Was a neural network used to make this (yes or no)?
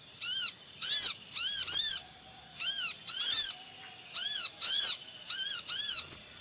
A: no